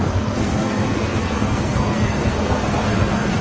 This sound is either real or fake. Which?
fake